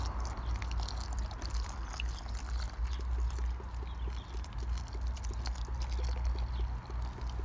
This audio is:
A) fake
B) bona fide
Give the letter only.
B